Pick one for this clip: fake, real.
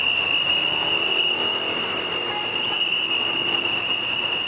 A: real